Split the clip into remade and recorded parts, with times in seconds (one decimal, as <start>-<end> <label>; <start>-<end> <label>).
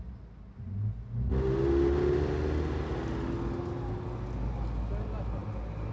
0.0-5.9 recorded